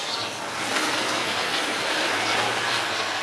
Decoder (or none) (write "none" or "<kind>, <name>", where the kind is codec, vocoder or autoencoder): codec, SNAC